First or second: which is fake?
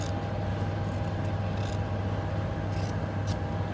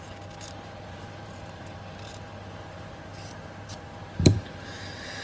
second